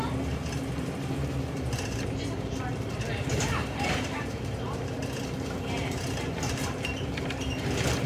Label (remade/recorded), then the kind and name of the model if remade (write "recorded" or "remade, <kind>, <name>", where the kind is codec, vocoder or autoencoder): remade, vocoder, BigVGAN v2